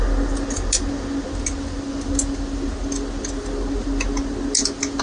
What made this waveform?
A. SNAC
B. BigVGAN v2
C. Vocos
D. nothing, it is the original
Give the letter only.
D